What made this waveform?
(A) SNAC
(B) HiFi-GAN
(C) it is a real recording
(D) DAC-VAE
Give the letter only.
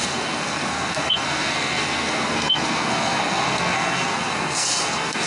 A